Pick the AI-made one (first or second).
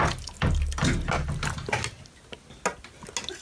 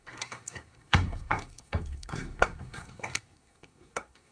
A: second